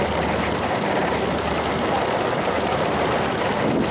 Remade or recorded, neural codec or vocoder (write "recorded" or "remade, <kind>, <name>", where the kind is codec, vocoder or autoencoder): recorded